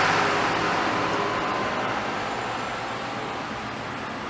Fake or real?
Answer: real